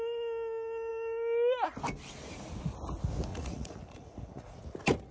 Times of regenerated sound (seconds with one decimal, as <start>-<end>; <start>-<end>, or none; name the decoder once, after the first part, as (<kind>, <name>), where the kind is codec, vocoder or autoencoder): 3.3-4.6 (vocoder, Vocos)